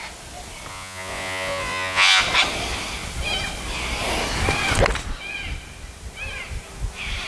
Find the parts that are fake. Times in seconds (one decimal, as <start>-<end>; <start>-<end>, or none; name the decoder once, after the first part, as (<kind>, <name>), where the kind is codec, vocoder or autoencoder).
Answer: 0.7-2.2 (vocoder, Vocos)